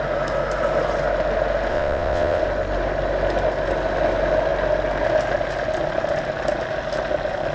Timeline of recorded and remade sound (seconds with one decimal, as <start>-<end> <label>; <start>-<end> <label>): 0.0-1.7 recorded; 1.7-2.4 remade; 2.4-7.5 recorded